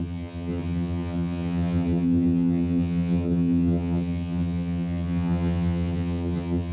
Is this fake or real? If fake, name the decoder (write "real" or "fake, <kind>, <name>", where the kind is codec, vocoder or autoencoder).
fake, vocoder, HiFi-GAN